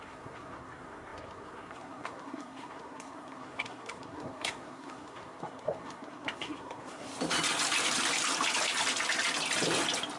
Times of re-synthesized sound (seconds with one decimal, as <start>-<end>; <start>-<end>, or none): 0.0-7.1